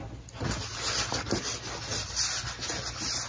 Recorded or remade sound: recorded